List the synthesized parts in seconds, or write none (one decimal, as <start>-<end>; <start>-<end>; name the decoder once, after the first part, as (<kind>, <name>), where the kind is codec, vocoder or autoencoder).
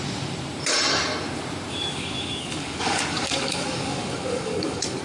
1.7-5.0 (codec, DAC)